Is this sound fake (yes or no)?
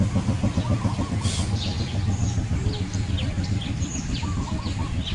no